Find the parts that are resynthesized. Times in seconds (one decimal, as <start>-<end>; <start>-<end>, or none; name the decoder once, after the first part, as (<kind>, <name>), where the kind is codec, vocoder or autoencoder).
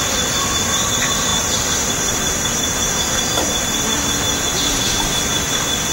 none